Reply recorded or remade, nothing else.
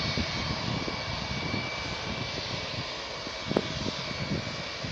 recorded